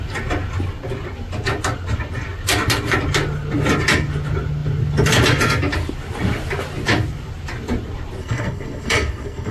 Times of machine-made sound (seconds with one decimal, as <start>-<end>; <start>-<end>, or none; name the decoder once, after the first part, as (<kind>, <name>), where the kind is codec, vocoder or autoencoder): 8.2-9.5 (codec, SNAC)